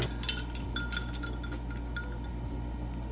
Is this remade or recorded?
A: recorded